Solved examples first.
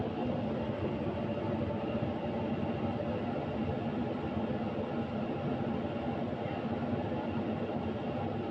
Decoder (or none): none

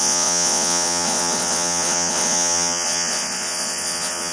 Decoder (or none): vocoder, Vocos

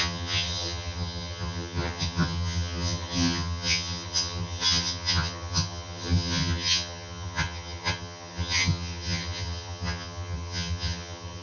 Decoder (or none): vocoder, HiFi-GAN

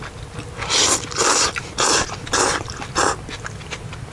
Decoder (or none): none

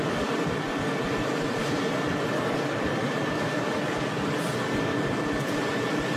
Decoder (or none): none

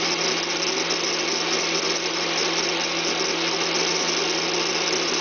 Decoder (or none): none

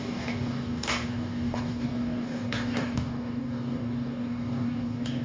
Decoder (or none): codec, DAC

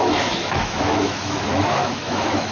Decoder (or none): autoencoder, DAC-VAE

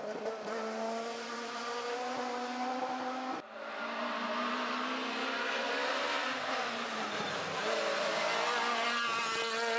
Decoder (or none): none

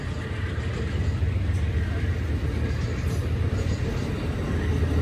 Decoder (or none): none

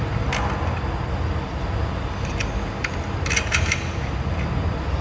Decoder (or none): none